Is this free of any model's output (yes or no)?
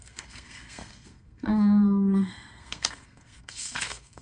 no